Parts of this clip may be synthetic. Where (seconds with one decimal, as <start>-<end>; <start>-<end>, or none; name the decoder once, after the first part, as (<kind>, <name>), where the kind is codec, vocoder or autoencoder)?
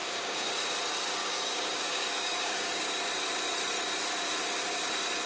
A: 0.0-0.6 (codec, DAC); 1.2-2.9